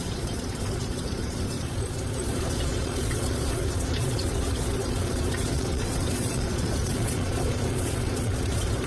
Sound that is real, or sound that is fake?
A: fake